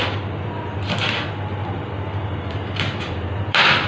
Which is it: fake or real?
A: real